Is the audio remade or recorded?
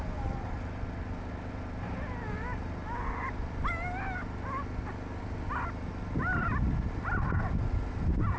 recorded